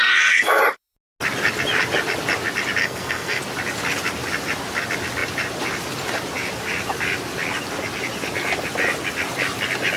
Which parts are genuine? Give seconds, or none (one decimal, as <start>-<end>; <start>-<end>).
0.6-2.8; 3.4-10.0